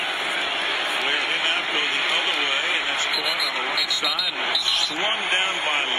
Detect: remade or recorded recorded